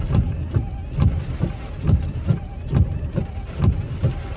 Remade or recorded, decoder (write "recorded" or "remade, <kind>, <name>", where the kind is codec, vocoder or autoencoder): recorded